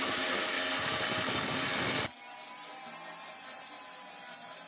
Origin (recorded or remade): recorded